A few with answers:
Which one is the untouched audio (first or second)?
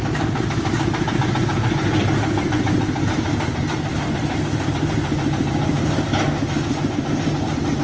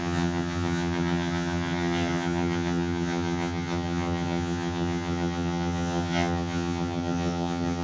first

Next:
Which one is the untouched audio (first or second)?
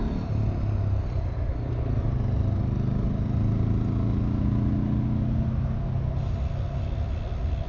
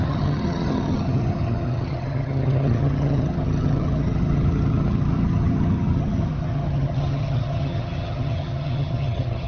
first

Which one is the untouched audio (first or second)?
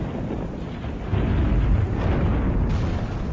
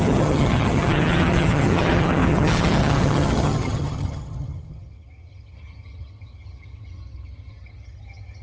first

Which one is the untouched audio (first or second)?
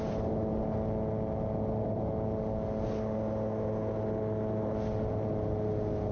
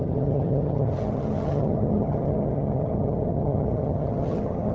first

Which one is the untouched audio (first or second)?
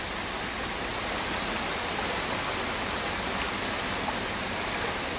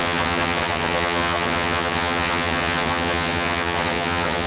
first